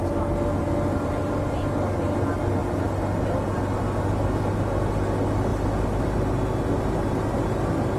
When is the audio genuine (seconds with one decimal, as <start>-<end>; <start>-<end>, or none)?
0.0-8.0